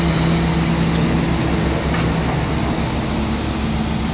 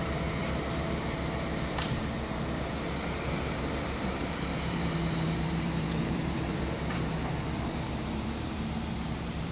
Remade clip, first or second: second